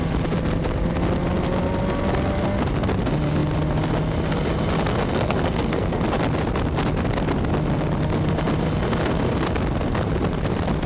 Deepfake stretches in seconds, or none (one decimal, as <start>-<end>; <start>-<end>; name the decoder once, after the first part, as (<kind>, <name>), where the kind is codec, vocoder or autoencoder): 5.1-6.0 (codec, SNAC)